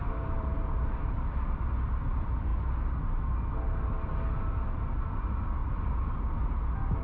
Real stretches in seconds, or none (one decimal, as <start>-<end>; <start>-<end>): 1.6-5.6; 6.6-7.0

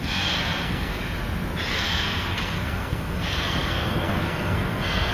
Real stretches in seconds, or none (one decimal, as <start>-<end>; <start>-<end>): 1.0-1.7

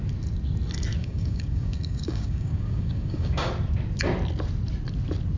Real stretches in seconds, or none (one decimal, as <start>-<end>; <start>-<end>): 0.0-1.0; 3.5-5.4

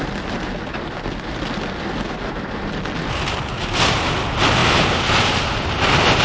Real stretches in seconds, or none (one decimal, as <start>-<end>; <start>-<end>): 0.0-6.2

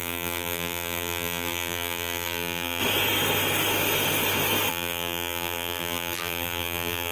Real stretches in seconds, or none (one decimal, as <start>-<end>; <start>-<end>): 2.8-4.7

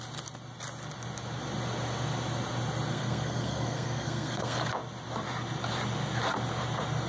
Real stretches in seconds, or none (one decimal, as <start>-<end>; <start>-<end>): 0.0-2.9; 4.6-7.1